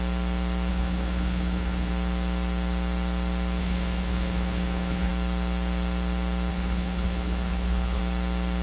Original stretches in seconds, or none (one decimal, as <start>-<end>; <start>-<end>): 0.0-0.7; 1.9-3.6; 5.1-6.5; 8.0-8.6